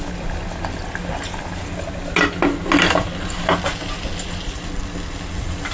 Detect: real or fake real